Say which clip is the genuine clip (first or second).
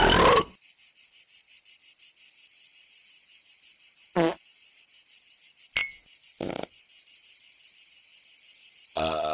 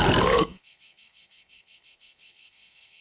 first